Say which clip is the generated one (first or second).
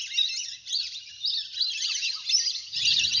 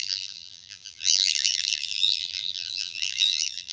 second